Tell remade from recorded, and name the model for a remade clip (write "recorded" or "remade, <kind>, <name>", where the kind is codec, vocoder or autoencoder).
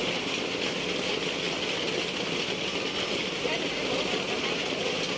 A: recorded